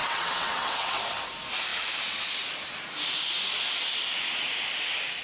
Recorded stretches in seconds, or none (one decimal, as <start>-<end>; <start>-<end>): 1.0-5.2